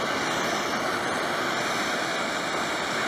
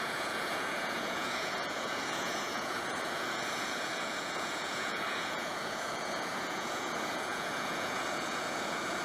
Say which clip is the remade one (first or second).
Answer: second